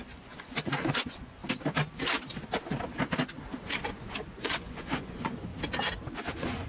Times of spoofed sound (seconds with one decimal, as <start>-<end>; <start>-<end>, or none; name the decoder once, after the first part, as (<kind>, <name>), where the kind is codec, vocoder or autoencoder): 0.0-1.4 (vocoder, Vocos); 3.8-5.5; 6.3-6.7